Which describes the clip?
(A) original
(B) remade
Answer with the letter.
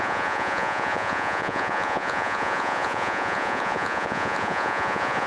B